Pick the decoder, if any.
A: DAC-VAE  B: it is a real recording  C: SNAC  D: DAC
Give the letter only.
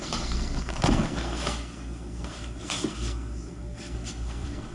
C